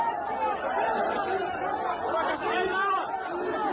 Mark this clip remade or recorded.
recorded